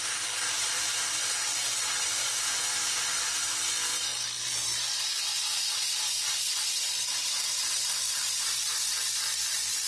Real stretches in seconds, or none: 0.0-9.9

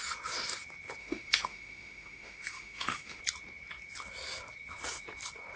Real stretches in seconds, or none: 0.0-1.0; 3.2-5.6

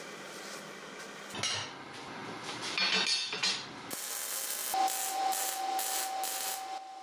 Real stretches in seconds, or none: 0.0-7.0

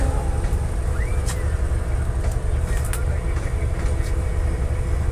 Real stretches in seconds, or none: 0.0-5.1